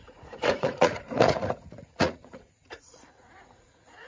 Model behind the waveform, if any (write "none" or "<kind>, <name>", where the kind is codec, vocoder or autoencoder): vocoder, Vocos